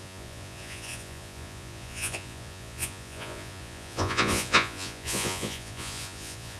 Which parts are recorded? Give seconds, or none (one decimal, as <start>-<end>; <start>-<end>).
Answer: none